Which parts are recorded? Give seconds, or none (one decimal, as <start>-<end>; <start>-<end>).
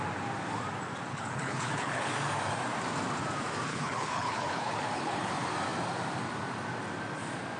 0.0-1.1; 2.1-3.7; 5.3-7.6